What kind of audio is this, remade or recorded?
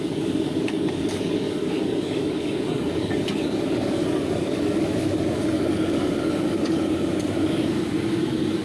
remade